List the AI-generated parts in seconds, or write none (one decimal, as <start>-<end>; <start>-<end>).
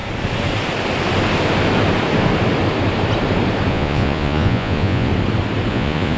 3.7-5.1; 5.7-6.2